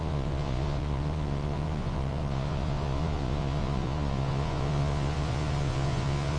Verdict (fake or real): fake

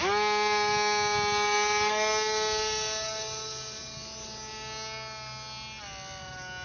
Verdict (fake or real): real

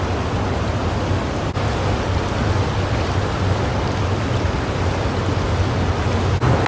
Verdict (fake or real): real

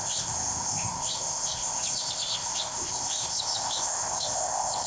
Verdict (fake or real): fake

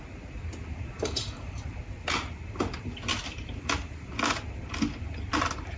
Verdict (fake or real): real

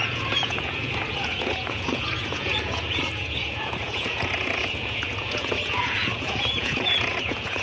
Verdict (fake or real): fake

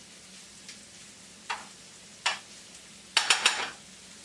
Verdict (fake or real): real